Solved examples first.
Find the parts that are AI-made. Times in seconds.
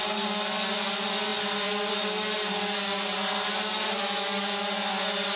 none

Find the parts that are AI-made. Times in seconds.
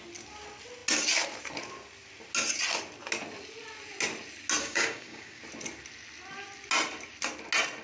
4.6-5.4 (codec, DAC)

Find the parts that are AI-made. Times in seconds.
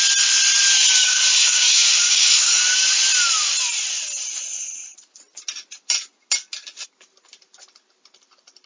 1.0-2.6 (codec, DAC)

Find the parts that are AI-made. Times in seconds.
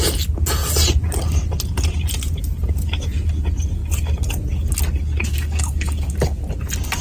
5.3-6.4 (codec, DAC)